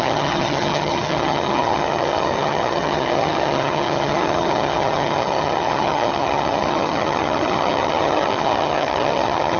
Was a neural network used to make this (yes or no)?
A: yes